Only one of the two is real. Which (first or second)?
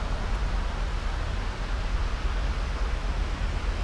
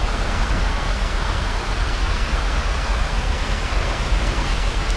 first